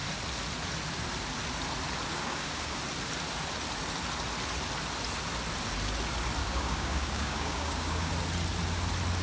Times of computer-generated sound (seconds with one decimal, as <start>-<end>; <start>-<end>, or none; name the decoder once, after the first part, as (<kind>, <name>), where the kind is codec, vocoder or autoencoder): 2.1-2.8 (codec, DAC); 6.4-8.1